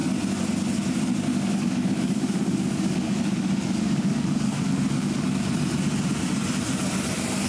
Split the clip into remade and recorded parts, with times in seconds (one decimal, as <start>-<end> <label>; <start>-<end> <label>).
0.0-1.3 recorded; 1.3-5.5 remade; 5.5-7.5 recorded